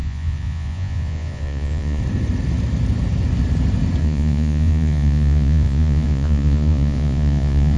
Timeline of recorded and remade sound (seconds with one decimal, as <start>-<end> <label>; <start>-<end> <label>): 0.0-2.0 remade; 2.0-4.0 recorded; 4.0-7.8 remade